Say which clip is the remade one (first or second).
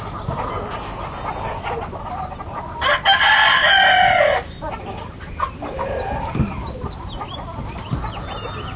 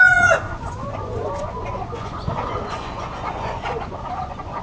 second